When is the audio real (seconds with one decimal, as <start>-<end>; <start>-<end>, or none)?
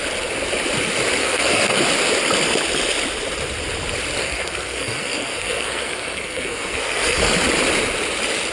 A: 0.0-1.2; 1.8-4.2; 7.2-8.5